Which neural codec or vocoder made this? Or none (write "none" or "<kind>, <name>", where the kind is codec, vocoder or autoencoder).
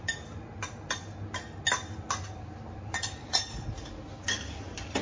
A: none